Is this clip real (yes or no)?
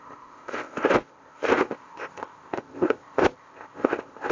no